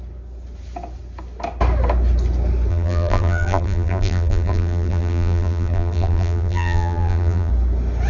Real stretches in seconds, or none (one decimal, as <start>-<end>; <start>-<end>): 0.0-2.7; 7.5-8.1